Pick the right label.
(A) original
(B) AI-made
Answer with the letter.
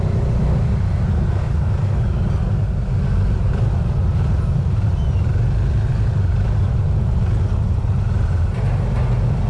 A